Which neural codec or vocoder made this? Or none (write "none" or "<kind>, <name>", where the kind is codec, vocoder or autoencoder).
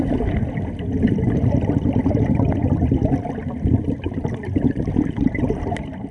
none